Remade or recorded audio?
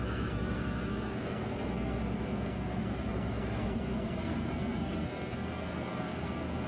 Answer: remade